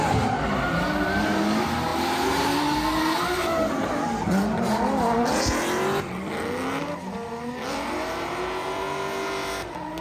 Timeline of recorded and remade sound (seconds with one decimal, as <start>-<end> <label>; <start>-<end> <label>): 0.0-10.0 recorded